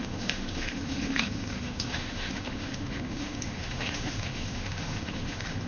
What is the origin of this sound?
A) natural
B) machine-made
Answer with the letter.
B